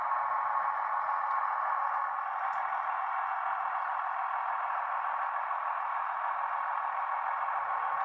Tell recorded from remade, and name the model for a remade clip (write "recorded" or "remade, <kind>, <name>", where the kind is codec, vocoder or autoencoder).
recorded